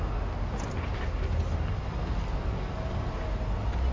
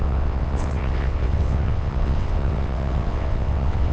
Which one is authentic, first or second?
first